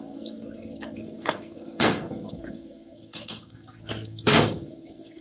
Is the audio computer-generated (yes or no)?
yes